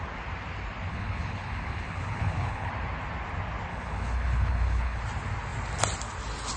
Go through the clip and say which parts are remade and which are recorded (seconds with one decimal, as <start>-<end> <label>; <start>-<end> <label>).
0.0-0.9 recorded; 0.9-2.7 remade; 2.7-3.7 recorded; 3.7-5.0 remade; 5.0-6.6 recorded